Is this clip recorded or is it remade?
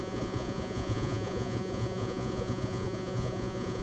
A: remade